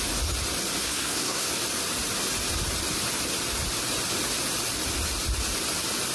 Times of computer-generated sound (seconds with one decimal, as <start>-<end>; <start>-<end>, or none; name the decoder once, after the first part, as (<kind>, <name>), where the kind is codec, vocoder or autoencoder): 0.8-1.5 (codec, SNAC)